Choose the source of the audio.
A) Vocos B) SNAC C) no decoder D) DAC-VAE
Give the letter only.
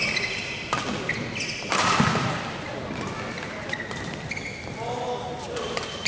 C